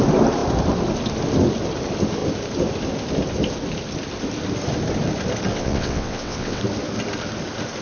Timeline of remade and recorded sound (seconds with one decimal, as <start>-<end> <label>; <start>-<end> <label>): 0.0-5.5 recorded; 5.5-6.6 remade; 6.6-7.8 recorded